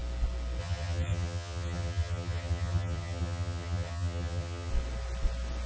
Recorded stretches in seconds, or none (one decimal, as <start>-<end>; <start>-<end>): 0.0-0.6; 4.7-5.7

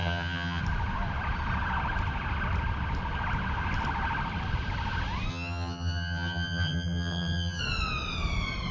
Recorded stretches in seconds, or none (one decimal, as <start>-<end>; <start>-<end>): 0.6-5.3; 7.6-8.7

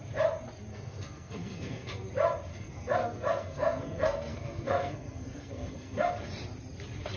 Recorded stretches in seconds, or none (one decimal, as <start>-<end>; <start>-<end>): 0.0-0.7; 2.1-2.5; 6.1-7.2

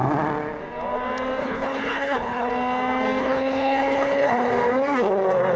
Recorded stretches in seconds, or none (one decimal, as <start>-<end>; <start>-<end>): 0.0-1.4; 2.5-3.2; 4.5-5.6

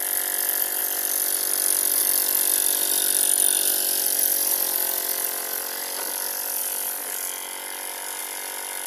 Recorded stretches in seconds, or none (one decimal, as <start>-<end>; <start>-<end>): 0.0-0.8; 2.0-8.9

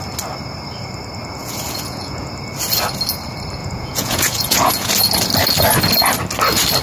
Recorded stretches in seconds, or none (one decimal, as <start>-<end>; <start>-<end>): 0.0-1.4; 2.3-3.6; 4.9-6.8

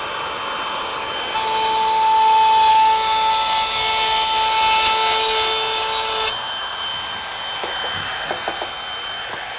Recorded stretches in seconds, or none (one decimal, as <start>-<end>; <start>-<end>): 0.0-2.7; 3.3-9.6

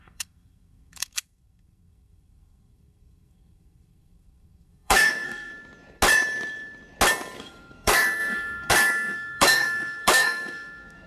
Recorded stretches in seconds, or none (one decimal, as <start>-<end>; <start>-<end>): 5.5-7.4